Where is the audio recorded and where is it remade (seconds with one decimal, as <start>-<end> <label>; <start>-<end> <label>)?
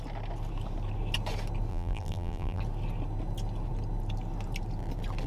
0.0-1.7 recorded; 1.7-2.6 remade; 2.6-5.3 recorded